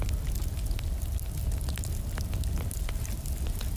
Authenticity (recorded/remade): recorded